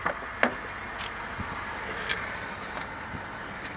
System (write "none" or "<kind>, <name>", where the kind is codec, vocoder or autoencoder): none